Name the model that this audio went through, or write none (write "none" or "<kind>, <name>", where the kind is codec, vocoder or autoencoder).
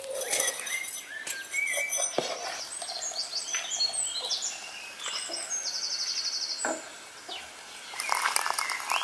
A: none